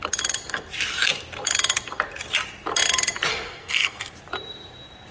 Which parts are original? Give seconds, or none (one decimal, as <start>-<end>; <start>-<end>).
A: 0.0-3.3; 4.1-5.1